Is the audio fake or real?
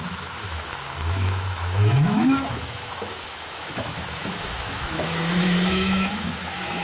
fake